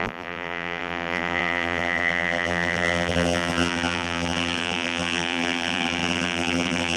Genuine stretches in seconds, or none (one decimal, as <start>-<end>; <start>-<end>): none